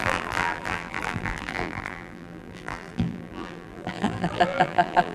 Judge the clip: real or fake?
fake